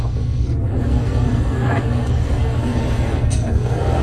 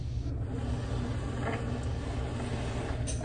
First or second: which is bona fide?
second